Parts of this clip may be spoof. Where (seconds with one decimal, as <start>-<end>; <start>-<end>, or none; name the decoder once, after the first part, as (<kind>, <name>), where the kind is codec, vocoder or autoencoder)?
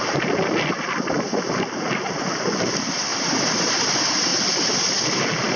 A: 3.1-3.8 (vocoder, BigVGAN v2)